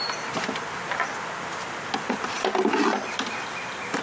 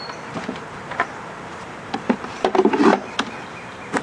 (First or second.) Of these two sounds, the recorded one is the first